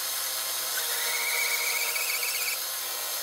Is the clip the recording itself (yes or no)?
yes